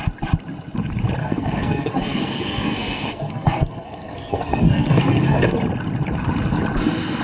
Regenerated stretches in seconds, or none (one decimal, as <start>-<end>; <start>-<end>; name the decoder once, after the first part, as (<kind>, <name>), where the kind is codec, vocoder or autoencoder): 1.2-5.5 (codec, SNAC)